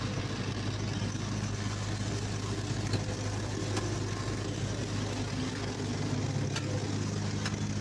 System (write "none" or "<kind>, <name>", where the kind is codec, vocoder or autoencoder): none